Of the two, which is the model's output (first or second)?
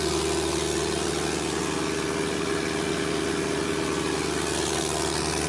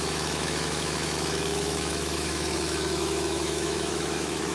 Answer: second